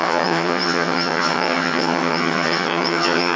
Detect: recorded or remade remade